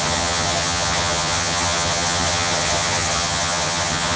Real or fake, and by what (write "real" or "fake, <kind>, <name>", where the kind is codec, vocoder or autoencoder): fake, vocoder, HiFi-GAN